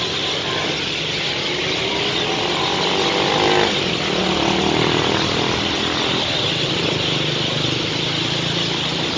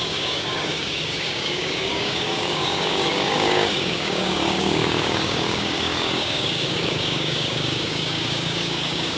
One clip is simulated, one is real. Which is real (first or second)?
first